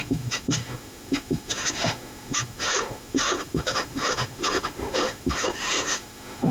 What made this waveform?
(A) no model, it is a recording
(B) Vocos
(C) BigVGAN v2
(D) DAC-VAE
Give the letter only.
D